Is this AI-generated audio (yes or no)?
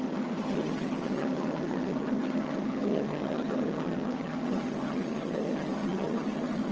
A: yes